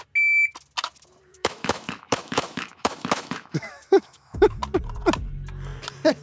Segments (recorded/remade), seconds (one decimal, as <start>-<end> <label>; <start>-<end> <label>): 0.0-1.3 recorded; 1.3-4.6 remade; 4.6-6.2 recorded